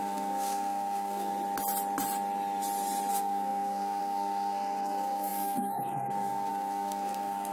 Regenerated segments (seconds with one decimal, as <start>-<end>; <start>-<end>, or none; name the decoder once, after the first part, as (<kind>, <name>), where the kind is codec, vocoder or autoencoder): 0.0-1.3 (codec, SNAC); 3.1-7.5